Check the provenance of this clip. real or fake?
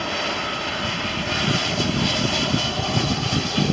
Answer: real